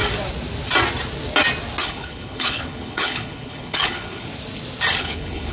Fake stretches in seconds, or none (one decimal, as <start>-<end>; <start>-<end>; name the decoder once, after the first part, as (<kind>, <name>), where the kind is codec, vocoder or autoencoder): 1.8-4.3 (codec, HILCodec); 5.0-5.5